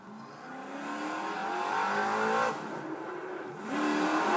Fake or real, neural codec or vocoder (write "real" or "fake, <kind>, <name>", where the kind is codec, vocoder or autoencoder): real